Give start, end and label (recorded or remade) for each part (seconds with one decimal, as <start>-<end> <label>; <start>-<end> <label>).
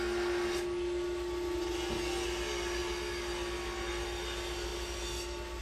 0.0-5.6 recorded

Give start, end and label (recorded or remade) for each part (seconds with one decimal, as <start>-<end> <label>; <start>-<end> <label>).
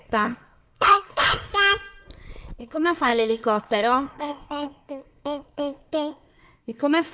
0.0-1.5 remade; 1.5-2.6 recorded; 2.6-7.1 remade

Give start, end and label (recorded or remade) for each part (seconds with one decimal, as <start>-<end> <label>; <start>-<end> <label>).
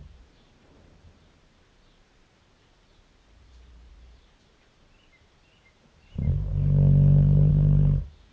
0.0-6.5 remade; 6.5-7.5 recorded; 7.5-8.3 remade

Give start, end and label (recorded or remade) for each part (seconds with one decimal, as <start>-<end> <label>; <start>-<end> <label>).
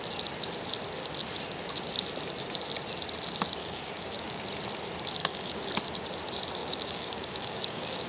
0.0-3.6 recorded; 3.6-4.4 remade; 4.4-5.2 recorded; 5.2-5.7 remade; 5.7-6.6 recorded; 6.6-8.1 remade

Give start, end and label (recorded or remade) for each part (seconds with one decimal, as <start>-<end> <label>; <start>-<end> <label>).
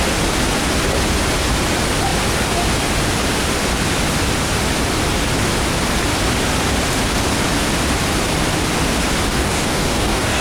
0.0-9.3 recorded; 9.3-10.4 remade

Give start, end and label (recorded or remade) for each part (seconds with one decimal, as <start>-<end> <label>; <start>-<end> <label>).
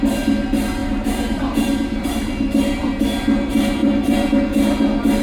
0.0-0.8 recorded; 0.8-3.0 remade; 3.0-3.8 recorded; 3.8-4.4 remade; 4.4-5.2 recorded